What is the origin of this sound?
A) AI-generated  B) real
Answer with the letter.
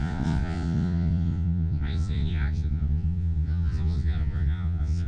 A